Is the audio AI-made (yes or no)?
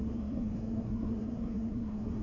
yes